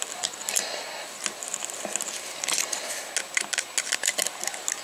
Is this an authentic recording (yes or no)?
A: yes